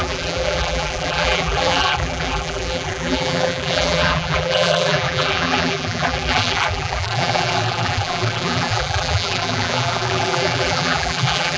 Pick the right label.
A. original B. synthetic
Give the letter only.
B